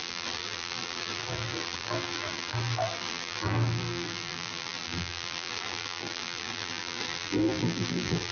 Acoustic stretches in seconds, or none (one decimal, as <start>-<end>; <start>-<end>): none